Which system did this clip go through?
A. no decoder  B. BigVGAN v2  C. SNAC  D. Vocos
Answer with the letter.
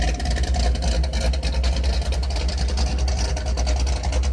A